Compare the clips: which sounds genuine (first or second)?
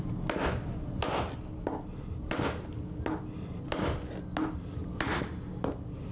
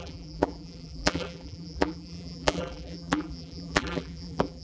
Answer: first